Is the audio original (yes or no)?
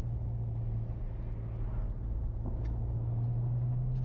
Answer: yes